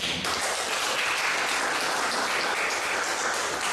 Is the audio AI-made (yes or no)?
no